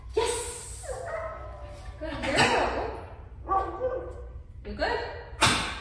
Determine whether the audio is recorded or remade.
recorded